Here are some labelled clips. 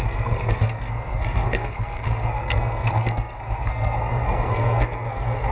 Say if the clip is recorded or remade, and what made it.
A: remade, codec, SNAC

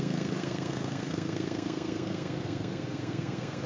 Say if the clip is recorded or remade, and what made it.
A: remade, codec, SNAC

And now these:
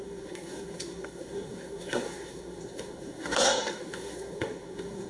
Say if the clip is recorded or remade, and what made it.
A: remade, codec, SNAC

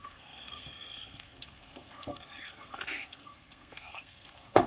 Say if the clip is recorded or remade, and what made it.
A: remade, codec, SNAC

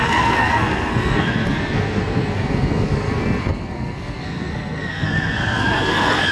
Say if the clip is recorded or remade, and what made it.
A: remade, codec, SNAC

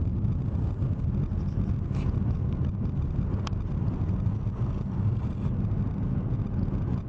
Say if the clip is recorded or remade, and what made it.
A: recorded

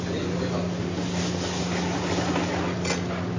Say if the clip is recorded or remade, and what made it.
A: recorded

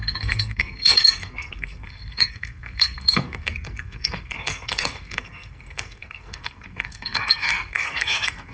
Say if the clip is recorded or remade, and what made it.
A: remade, codec, SNAC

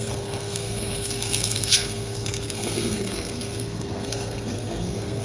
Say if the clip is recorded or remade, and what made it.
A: remade, codec, SNAC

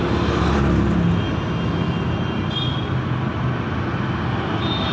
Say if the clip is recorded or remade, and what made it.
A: recorded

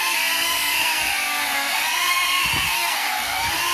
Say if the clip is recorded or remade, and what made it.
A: remade, codec, SNAC